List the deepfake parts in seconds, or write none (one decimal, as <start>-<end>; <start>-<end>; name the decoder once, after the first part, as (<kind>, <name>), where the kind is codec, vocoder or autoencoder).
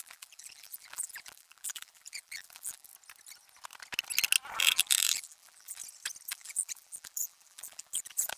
0.0-2.9 (vocoder, BigVGAN v2); 4.6-5.8; 6.3-8.4